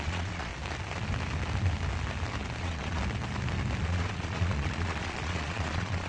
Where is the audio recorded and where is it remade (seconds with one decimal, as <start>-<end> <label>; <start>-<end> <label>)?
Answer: 0.0-0.5 remade; 0.5-2.6 recorded; 2.6-3.0 remade; 3.0-3.8 recorded; 3.8-6.1 remade